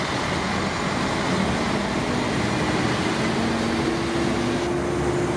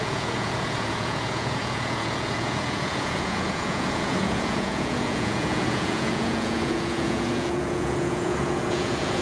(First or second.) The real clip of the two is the first